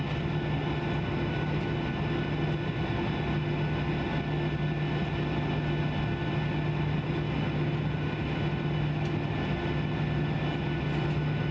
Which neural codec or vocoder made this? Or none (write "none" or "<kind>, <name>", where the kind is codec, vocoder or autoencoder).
none